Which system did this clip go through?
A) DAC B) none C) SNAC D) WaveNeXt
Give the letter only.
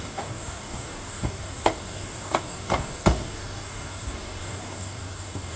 A